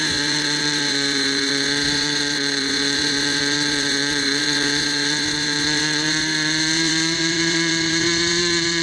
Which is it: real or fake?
fake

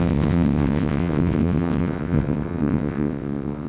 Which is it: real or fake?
fake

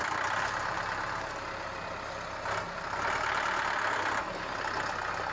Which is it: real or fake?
real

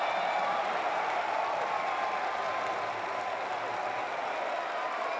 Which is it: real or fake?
real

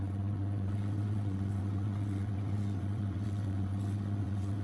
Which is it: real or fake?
fake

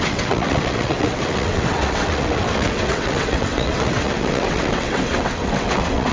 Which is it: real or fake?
fake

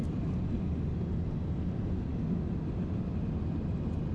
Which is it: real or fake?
real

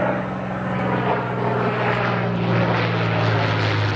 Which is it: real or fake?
real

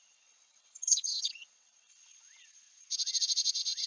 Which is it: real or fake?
fake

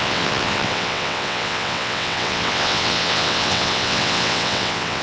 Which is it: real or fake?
fake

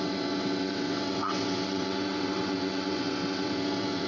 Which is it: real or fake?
fake